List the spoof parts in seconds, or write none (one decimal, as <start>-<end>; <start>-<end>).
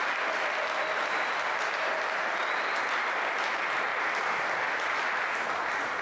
none